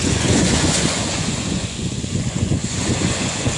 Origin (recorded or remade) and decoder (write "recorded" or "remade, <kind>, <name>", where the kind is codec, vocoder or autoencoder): remade, vocoder, Vocos